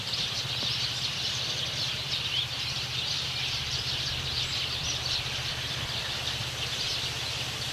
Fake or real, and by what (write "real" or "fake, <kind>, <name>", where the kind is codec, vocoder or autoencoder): fake, vocoder, BigVGAN v2